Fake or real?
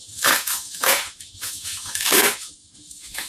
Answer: fake